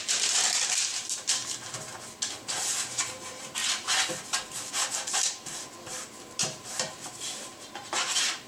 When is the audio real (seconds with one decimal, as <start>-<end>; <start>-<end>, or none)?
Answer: 1.4-2.3; 3.6-4.7